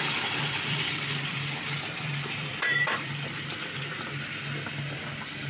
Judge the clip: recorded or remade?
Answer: remade